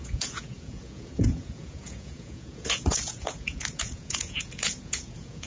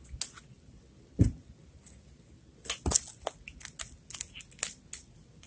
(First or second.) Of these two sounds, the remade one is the first